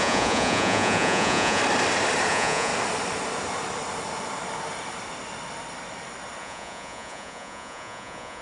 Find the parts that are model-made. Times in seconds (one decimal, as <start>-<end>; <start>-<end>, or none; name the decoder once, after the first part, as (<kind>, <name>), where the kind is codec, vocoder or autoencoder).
0.0-1.6 (vocoder, Vocos); 2.3-2.7; 6.4-8.4